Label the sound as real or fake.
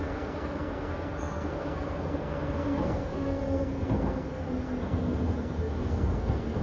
fake